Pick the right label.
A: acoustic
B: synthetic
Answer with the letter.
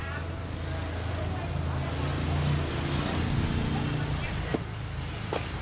A